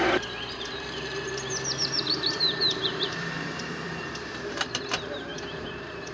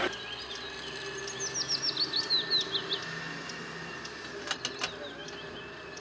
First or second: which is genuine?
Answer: second